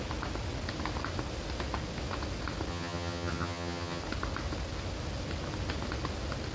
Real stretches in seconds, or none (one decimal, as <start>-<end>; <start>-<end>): 0.0-2.7; 4.0-6.5

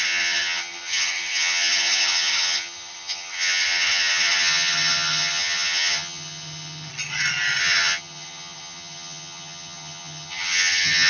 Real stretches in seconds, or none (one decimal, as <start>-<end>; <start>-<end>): 6.9-7.6

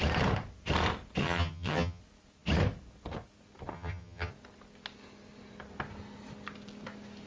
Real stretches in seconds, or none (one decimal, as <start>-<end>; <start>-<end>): 0.0-1.2; 2.0-3.7; 4.3-7.3

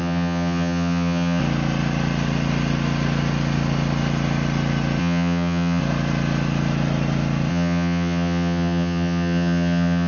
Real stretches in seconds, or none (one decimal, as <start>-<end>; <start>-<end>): 1.4-5.0; 5.8-7.5